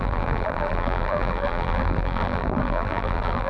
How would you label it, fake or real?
fake